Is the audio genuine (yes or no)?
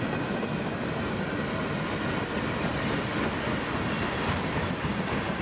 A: yes